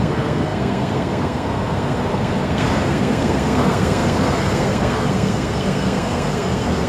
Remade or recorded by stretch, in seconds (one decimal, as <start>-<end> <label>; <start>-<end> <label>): 0.0-6.9 remade